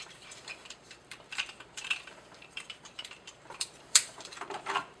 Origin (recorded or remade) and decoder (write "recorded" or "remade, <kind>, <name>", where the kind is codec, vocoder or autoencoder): remade, vocoder, BigVGAN v2